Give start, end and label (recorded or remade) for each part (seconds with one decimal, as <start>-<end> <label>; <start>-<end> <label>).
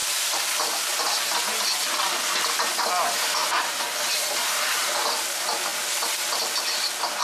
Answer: 0.0-1.9 recorded; 1.9-3.4 remade; 3.4-5.2 recorded; 5.2-5.7 remade; 5.7-7.2 recorded